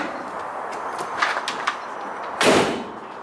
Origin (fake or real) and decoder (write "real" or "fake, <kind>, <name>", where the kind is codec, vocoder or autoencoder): real